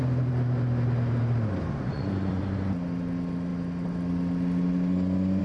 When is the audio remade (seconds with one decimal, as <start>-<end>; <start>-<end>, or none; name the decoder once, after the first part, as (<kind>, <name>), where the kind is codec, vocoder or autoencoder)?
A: 1.9-2.4 (vocoder, Vocos)